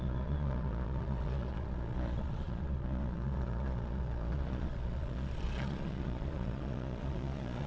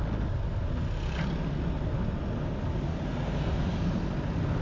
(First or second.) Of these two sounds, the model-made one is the first